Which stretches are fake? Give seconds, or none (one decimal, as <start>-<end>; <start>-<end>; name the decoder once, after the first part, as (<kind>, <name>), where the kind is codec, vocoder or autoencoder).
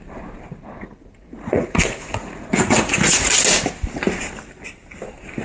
0.8-3.3 (vocoder, Vocos)